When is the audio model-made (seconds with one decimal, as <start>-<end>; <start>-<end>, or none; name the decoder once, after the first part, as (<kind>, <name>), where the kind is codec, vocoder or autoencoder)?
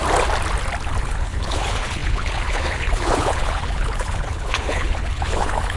1.0-5.8 (codec, HILCodec)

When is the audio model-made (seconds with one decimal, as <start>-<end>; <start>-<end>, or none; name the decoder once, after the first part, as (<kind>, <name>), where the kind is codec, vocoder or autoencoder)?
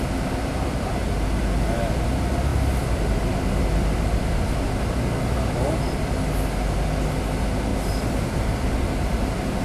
0.5-1.4 (vocoder, BigVGAN v2); 7.7-8.9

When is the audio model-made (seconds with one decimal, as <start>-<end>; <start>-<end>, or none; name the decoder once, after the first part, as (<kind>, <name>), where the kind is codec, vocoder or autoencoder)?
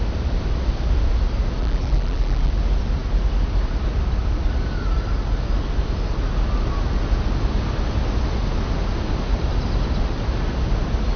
1.6-2.5 (vocoder, BigVGAN v2)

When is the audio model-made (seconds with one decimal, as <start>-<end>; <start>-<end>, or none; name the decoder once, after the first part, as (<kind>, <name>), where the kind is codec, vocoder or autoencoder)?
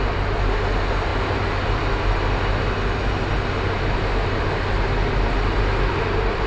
none